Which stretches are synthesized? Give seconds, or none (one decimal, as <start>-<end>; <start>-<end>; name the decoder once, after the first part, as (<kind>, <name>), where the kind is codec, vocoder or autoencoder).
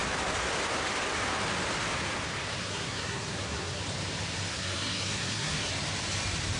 2.6-3.8 (codec, SNAC); 4.5-5.7